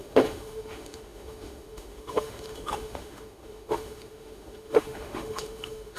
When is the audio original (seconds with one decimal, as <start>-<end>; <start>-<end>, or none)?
none